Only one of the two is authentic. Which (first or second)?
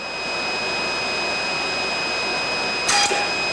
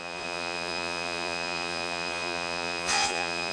first